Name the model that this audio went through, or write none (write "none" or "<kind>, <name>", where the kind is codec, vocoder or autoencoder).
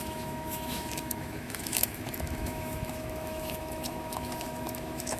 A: autoencoder, DAC-VAE